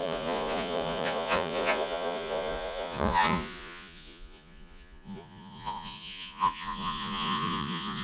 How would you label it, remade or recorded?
remade